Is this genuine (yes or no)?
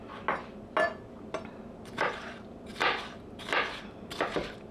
yes